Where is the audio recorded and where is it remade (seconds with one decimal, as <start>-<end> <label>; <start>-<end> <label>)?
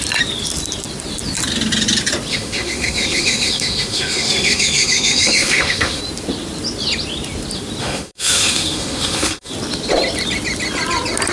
0.0-2.3 recorded; 2.3-6.0 remade; 6.0-7.8 recorded; 7.8-9.5 remade; 9.5-11.3 recorded